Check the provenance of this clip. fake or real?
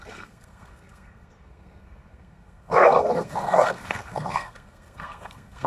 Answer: fake